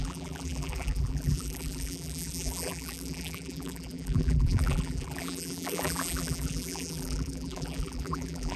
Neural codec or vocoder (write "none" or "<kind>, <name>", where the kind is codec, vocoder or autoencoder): vocoder, BigVGAN v2